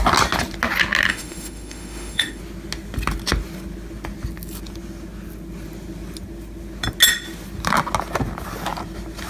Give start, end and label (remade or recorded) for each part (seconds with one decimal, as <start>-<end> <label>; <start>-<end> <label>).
0.0-1.1 recorded; 1.1-2.4 remade; 2.4-9.3 recorded